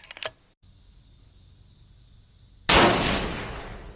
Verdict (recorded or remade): recorded